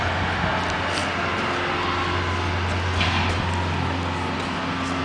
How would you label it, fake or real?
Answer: real